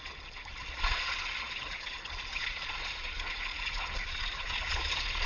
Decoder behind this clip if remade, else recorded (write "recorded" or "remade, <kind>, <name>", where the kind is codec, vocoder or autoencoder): remade, vocoder, Vocos